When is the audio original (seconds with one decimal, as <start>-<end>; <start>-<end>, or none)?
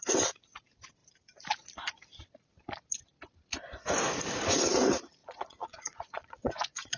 0.0-5.2